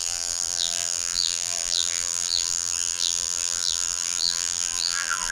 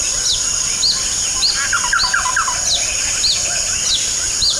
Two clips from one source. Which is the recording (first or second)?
second